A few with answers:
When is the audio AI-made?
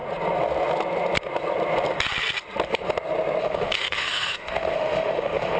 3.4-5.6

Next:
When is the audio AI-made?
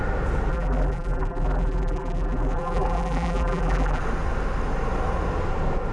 0.5-4.0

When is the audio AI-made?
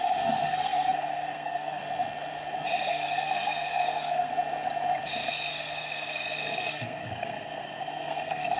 0.0-1.8; 2.9-4.3; 5.3-8.6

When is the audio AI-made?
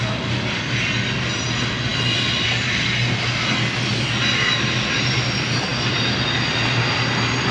none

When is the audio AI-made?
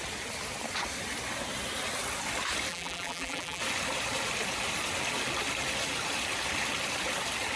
2.7-3.6